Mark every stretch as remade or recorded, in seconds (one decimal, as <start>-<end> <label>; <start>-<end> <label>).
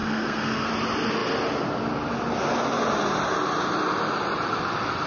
0.0-0.7 remade; 0.7-5.1 recorded